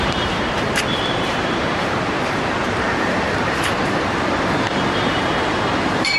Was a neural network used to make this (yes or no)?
yes